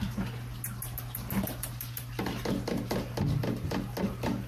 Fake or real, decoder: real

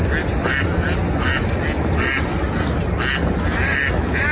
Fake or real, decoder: real